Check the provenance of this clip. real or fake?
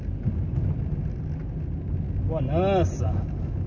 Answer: real